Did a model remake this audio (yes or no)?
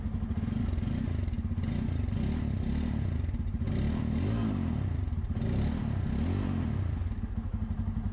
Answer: no